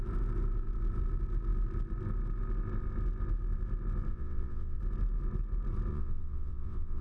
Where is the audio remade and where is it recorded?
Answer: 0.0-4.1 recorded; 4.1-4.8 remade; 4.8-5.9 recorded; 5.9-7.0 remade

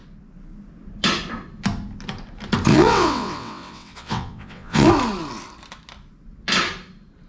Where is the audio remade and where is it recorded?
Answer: 0.0-2.7 recorded; 2.7-4.9 remade; 4.9-7.3 recorded

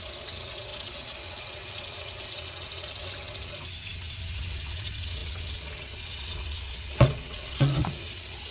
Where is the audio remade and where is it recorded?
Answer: 0.0-8.5 remade

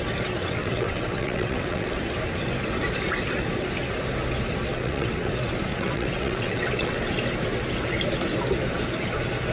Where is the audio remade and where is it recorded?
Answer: 0.0-0.4 recorded; 0.4-2.0 remade; 2.0-4.7 recorded; 4.7-5.3 remade; 5.3-5.7 recorded; 5.7-7.1 remade; 7.1-9.5 recorded

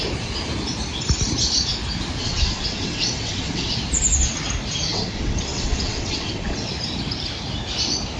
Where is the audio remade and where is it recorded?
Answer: 0.0-2.2 recorded; 2.2-3.7 remade; 3.7-4.9 recorded; 4.9-6.7 remade; 6.7-8.2 recorded

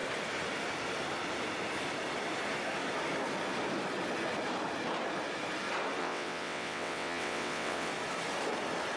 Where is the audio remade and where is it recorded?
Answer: 0.0-6.0 recorded; 6.0-7.9 remade; 7.9-9.0 recorded

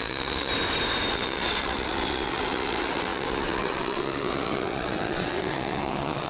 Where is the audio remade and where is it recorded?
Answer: 0.0-0.5 remade; 0.5-1.1 recorded; 1.1-6.3 remade

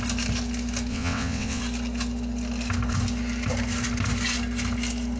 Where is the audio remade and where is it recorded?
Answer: 0.0-0.9 recorded; 0.9-1.6 remade; 1.6-5.2 recorded